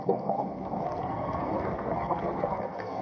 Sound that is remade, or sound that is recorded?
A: remade